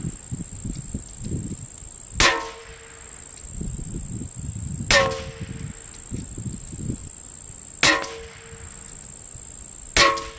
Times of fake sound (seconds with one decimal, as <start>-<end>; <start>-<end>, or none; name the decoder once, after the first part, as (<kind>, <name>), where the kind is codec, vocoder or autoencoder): none